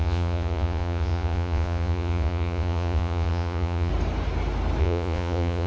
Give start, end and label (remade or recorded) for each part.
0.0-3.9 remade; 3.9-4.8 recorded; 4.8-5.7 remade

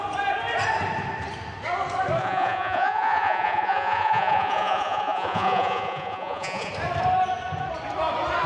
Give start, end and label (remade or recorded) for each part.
0.0-2.2 recorded; 2.2-6.7 remade; 6.7-8.5 recorded

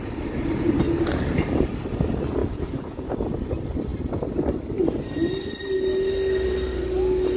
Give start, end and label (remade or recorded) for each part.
0.0-2.4 recorded; 2.4-3.1 remade; 3.1-7.4 recorded